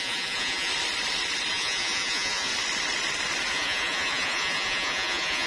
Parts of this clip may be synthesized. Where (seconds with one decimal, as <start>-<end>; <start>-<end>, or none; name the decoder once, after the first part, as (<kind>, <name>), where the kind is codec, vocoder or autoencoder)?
0.0-0.7 (vocoder, Vocos); 1.5-2.5; 3.5-5.5